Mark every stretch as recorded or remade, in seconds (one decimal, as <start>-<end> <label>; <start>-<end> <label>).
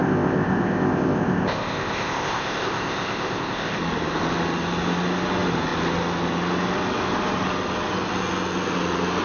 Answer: 0.0-3.8 remade; 3.8-9.2 recorded